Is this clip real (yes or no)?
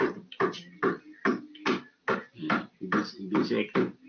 yes